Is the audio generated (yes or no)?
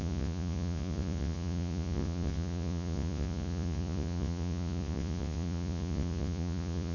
yes